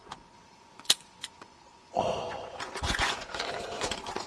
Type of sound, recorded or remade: remade